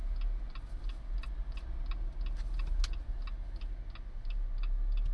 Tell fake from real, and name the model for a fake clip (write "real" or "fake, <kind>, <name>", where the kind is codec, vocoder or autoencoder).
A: real